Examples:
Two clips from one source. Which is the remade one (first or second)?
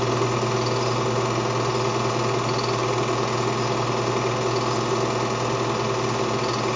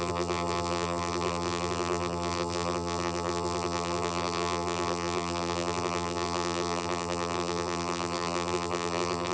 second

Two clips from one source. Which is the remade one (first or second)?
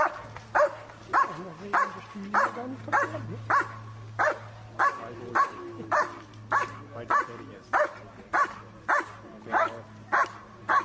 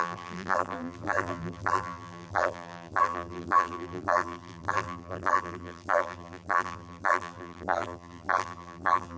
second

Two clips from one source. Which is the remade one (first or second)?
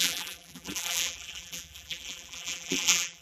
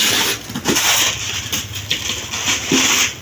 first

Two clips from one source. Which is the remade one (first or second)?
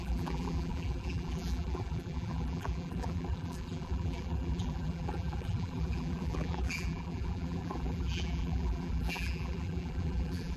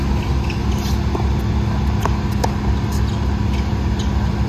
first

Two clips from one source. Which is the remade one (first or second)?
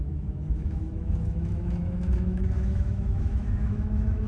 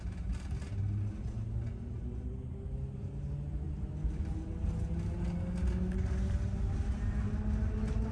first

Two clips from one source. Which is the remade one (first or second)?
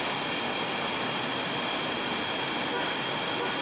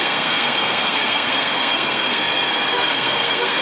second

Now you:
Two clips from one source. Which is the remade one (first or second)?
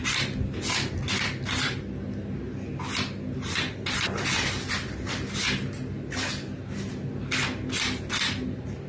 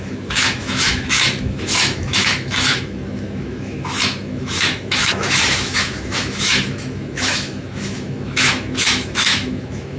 second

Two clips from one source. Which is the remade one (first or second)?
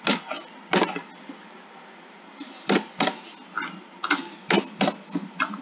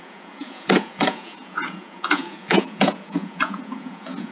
second